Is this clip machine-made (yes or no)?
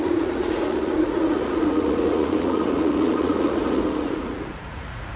yes